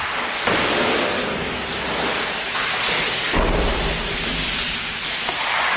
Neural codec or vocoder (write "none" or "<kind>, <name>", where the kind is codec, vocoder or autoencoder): none